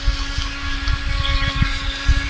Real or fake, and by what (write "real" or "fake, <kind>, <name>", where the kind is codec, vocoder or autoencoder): real